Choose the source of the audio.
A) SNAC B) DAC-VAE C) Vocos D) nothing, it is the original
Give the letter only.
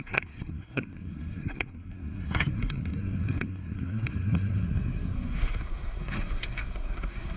A